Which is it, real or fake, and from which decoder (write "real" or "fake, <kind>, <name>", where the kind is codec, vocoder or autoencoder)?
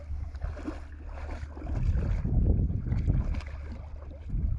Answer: real